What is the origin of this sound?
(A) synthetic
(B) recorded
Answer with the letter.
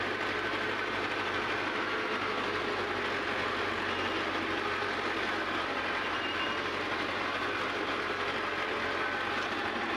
B